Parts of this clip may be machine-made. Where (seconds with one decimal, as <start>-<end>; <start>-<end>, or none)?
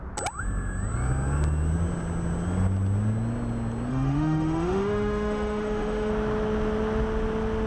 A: 3.9-6.1